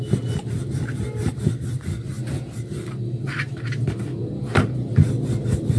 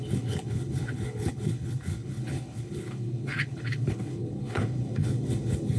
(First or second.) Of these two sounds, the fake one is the second